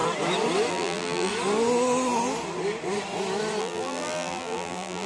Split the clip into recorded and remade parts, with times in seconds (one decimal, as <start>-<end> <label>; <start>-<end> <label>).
0.0-0.7 recorded; 0.7-1.3 remade; 1.3-3.6 recorded; 3.6-5.1 remade